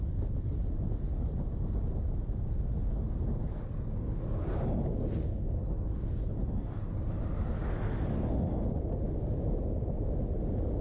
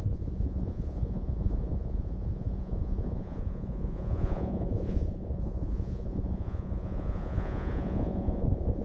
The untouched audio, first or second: first